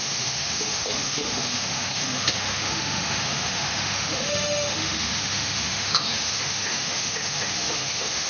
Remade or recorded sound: remade